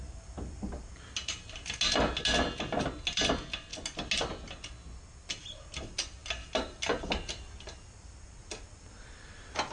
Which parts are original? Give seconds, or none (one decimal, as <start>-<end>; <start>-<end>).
0.0-9.7